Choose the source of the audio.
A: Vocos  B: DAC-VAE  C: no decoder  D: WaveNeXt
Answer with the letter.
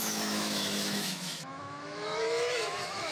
B